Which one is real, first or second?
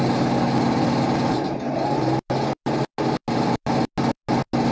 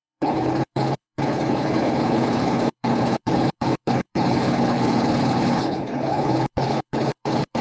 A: first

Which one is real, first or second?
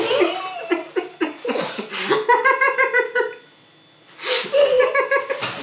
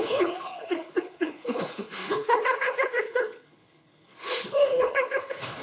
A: first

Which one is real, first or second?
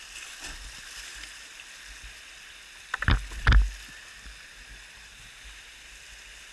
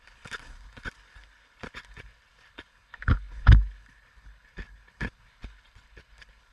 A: first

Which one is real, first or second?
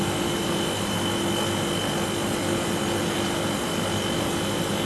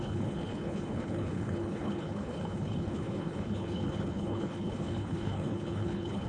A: first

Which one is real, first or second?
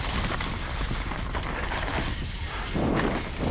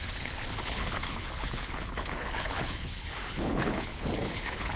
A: first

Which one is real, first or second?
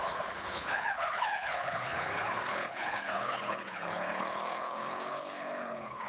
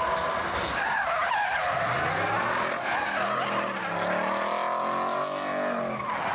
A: second